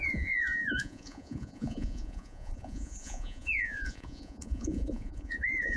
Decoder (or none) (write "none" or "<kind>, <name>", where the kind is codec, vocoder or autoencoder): vocoder, Vocos